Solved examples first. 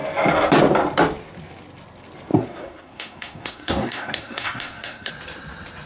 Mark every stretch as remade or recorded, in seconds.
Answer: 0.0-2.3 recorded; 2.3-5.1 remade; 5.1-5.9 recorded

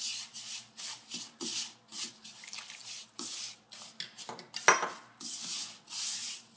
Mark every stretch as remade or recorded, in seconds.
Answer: 0.0-6.6 recorded

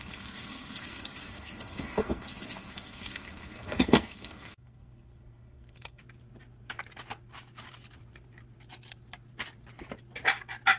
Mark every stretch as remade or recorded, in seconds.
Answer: 0.0-6.0 remade; 6.0-10.8 recorded